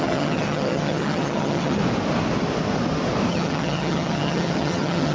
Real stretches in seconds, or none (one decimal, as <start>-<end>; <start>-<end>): 1.8-3.3